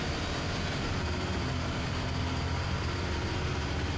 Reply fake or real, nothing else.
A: real